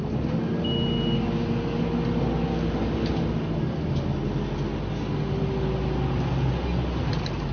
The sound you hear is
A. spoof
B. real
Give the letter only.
B